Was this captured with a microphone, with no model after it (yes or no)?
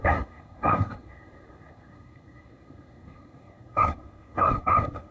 no